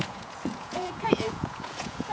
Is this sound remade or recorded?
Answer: remade